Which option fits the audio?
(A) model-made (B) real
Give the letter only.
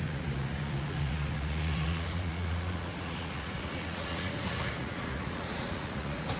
A